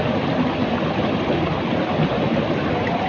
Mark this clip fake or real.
fake